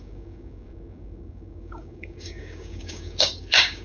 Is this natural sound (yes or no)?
no